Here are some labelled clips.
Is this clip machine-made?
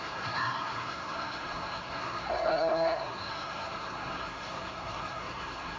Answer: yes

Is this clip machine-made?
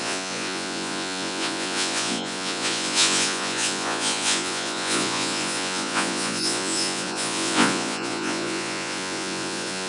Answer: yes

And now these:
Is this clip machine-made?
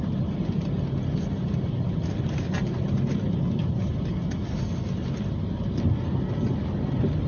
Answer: no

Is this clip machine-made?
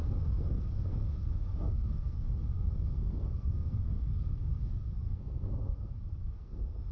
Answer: yes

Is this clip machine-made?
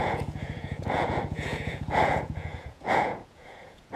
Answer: yes